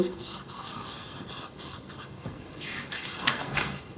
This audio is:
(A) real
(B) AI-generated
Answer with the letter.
B